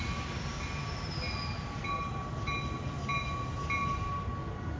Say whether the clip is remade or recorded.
recorded